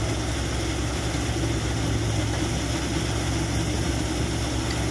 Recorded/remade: recorded